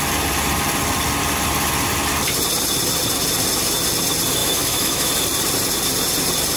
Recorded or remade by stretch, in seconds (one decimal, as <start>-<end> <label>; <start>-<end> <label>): 0.0-4.4 recorded; 4.4-5.1 remade; 5.1-6.6 recorded